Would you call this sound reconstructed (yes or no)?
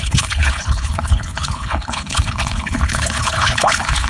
yes